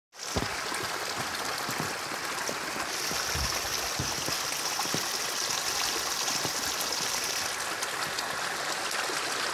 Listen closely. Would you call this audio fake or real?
real